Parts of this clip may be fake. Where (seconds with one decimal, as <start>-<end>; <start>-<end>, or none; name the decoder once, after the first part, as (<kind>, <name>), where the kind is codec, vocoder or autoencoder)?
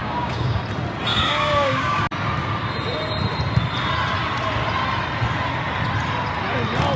0.0-0.6 (codec, DAC); 1.1-2.0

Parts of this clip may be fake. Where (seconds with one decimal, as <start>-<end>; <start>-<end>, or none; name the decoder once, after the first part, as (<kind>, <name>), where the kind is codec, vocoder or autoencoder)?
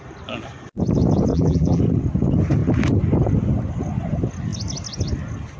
1.3-1.8 (vocoder, BigVGAN v2)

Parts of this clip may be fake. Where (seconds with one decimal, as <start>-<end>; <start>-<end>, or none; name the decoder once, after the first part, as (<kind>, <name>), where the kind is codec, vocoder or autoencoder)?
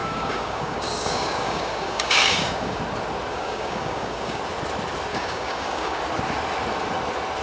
0.0-2.8 (codec, DAC); 3.3-4.4; 5.1-6.0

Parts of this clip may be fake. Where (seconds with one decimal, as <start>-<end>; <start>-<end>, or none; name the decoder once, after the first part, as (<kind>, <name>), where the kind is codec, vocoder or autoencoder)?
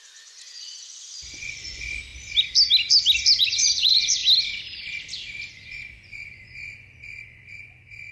0.0-2.1 (vocoder, Vocos); 3.4-4.2; 5.5-8.1